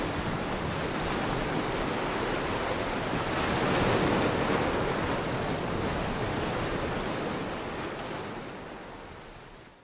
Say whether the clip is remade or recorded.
recorded